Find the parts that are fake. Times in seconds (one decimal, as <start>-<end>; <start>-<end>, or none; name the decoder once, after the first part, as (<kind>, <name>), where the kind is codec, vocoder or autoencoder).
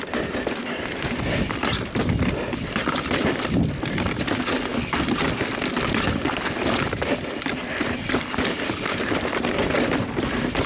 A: 0.0-4.7 (vocoder, BigVGAN v2); 5.9-10.7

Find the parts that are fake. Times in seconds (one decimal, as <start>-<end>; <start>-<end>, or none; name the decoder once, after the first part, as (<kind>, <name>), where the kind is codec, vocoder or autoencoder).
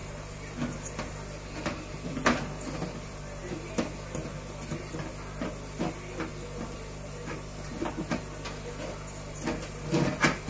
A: none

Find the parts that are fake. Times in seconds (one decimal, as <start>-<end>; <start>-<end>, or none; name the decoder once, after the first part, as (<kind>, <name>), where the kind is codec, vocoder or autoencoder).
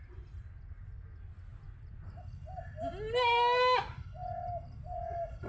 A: none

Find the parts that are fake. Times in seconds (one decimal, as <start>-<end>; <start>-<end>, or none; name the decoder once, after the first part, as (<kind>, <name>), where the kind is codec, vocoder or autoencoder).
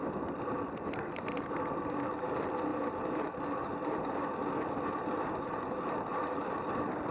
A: none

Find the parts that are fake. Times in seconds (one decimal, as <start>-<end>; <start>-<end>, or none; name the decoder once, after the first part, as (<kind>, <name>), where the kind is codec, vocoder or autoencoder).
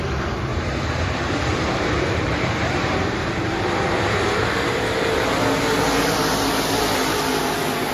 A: 0.5-5.2 (vocoder, BigVGAN v2)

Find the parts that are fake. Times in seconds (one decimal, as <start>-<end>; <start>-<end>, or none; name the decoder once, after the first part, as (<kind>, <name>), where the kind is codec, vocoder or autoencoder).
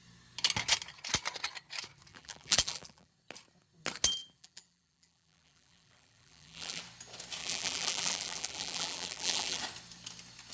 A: 2.1-3.1 (vocoder, BigVGAN v2); 4.2-6.8; 7.4-9.6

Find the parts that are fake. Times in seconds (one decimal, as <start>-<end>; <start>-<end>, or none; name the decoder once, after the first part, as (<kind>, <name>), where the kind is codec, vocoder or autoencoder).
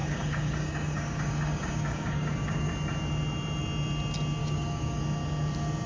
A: 0.0-2.7 (codec, DAC); 4.4-5.0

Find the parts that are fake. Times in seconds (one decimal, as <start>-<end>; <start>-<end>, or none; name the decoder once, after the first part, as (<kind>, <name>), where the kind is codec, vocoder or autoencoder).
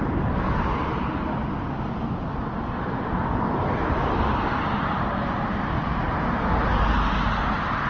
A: none